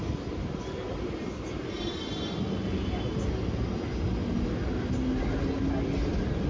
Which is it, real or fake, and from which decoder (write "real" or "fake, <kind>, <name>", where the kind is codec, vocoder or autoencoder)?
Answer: real